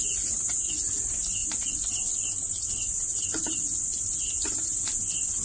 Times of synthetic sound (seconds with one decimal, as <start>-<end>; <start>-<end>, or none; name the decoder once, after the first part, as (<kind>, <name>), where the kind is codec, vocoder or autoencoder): none